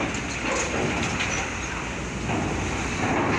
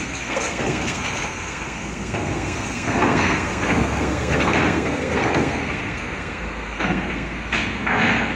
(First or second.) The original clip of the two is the first